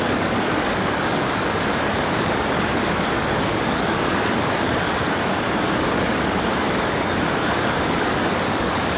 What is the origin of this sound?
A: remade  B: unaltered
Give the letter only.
A